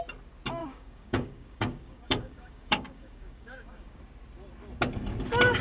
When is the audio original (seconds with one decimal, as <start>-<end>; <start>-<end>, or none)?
0.0-0.6; 4.0-5.6